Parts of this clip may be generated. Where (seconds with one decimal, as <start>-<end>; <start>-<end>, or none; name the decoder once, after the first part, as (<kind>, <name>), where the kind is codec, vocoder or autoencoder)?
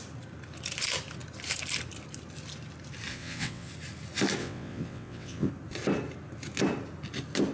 3.1-3.7 (vocoder, WaveNeXt); 4.4-5.5